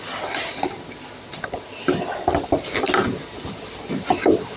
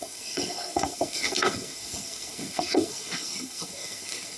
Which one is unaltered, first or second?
first